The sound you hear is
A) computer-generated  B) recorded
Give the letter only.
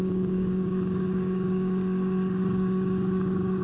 A